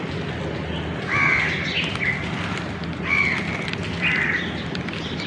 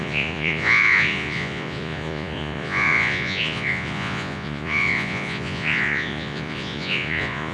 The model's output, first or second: second